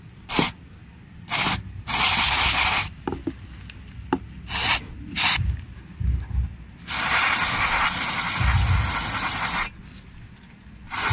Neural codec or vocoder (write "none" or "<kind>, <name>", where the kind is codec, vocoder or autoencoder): none